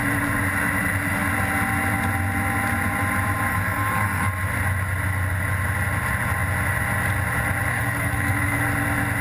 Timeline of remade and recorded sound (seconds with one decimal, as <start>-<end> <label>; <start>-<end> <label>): 0.0-3.5 recorded; 3.5-4.3 remade; 4.3-7.7 recorded; 7.7-8.6 remade; 8.6-9.2 recorded